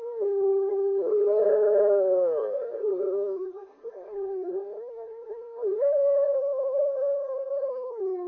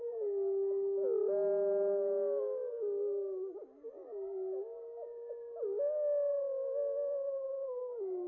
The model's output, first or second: first